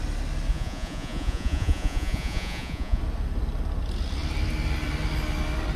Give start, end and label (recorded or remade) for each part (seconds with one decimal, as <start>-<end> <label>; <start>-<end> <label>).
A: 0.0-0.5 recorded; 0.5-3.0 remade; 3.0-5.8 recorded